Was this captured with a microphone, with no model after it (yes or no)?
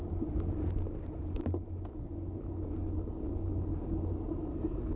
yes